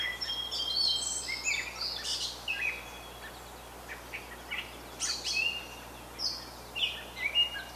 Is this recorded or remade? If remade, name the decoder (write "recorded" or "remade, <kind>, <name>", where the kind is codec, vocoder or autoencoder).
recorded